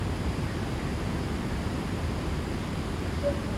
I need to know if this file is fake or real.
fake